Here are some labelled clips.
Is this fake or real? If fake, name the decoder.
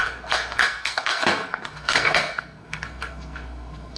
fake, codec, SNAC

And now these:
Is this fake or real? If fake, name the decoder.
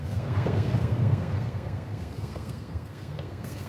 fake, codec, SNAC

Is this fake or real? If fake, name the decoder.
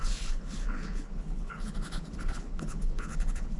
fake, codec, HILCodec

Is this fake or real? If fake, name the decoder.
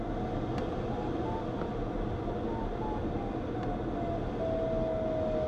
real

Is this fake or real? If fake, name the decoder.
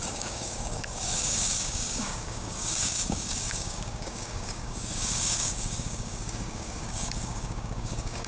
fake, codec, DAC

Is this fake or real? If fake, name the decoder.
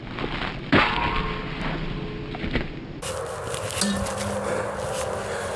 real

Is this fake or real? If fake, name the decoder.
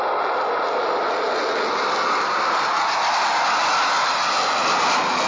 real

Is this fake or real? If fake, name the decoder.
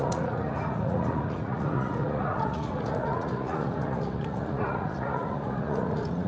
fake, vocoder, Vocos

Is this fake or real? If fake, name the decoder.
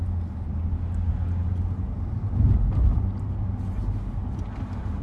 real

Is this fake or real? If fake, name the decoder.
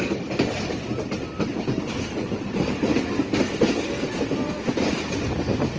real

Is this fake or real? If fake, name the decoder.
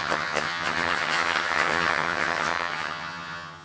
fake, vocoder, HiFi-GAN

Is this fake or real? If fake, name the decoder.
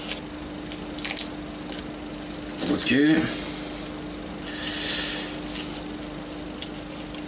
real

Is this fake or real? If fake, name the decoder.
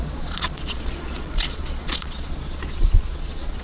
fake, vocoder, Vocos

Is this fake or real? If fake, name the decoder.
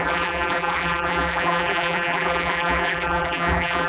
fake, vocoder, BigVGAN v2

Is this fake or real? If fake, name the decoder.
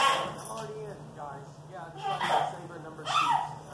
real